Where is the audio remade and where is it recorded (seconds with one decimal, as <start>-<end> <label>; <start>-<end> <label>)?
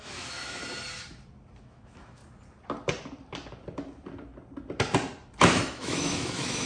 0.0-0.6 remade; 0.6-1.6 recorded; 1.6-2.2 remade; 2.2-5.4 recorded; 5.4-6.7 remade